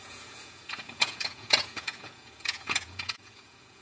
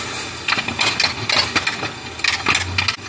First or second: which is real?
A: second